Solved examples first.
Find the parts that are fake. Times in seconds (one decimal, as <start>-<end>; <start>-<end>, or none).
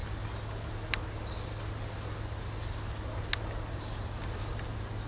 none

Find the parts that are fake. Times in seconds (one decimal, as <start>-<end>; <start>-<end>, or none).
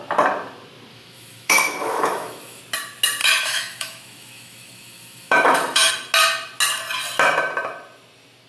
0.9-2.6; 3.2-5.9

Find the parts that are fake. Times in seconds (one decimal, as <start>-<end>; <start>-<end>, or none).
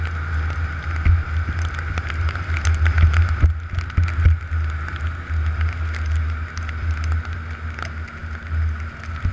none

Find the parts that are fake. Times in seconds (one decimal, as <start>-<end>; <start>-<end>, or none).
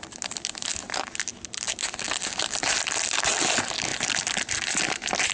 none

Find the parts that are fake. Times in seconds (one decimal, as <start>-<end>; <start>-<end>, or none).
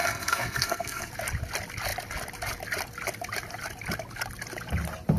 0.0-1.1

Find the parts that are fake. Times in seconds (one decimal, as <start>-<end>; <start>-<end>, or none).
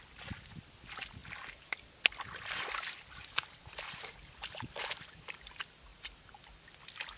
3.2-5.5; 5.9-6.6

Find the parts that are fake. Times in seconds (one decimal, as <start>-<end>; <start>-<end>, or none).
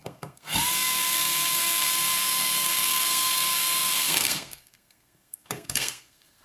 0.0-6.4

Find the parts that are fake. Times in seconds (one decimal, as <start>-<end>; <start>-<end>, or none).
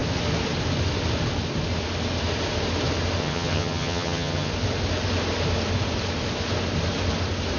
3.2-4.5